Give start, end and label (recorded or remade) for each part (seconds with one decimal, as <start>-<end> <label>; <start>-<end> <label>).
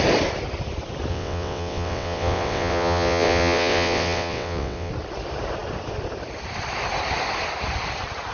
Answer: 0.0-1.1 recorded; 1.1-4.9 remade; 4.9-8.3 recorded